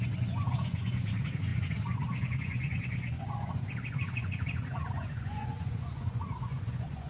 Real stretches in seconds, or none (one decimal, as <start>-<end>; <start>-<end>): none